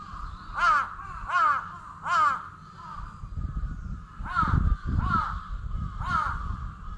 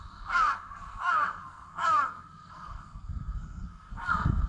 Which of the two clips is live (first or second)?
first